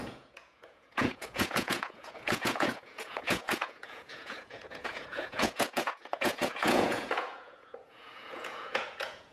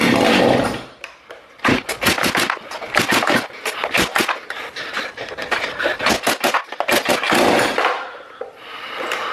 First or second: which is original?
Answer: second